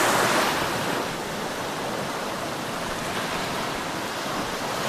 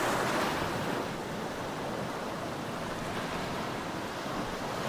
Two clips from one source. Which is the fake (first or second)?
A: first